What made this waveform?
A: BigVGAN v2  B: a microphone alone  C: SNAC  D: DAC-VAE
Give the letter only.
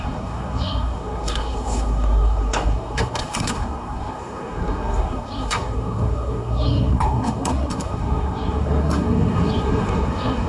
C